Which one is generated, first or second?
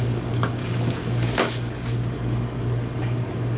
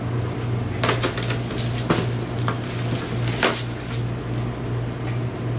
first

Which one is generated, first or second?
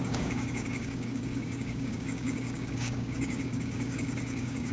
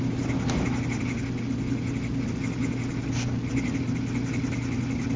first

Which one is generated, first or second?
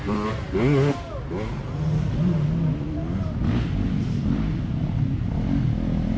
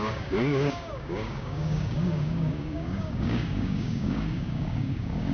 second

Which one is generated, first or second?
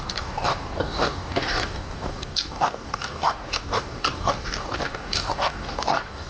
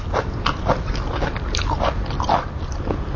first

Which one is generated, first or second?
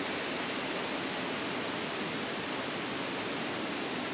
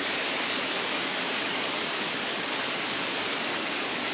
second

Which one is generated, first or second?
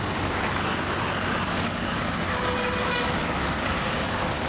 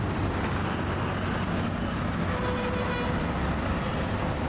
first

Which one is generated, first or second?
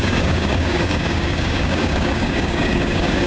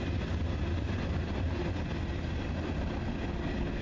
first